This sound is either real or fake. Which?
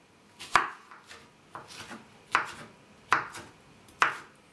real